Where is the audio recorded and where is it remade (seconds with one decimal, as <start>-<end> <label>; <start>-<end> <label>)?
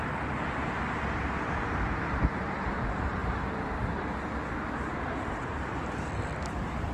0.0-6.9 recorded